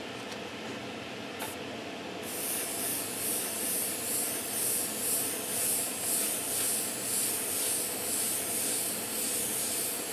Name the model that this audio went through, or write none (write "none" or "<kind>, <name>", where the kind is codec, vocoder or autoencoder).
none